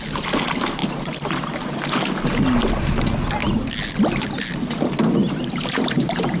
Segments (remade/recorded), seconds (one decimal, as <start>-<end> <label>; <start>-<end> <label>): 0.0-5.2 recorded; 5.2-6.4 remade